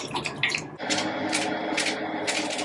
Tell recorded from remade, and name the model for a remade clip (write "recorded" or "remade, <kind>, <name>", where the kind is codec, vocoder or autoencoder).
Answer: recorded